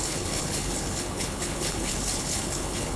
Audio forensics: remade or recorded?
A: remade